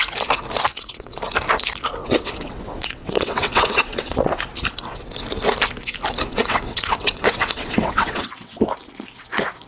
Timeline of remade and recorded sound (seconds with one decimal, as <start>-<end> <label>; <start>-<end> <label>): 0.0-0.7 recorded; 0.7-1.2 remade; 1.2-2.0 recorded; 2.0-4.4 remade; 4.4-6.3 recorded; 6.3-8.6 remade; 8.6-9.7 recorded